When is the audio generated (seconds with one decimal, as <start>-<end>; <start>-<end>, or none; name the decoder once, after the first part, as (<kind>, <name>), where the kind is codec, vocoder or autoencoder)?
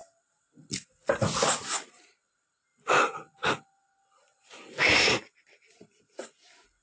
2.7-3.2 (vocoder, BigVGAN v2)